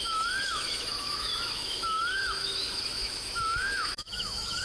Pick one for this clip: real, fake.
fake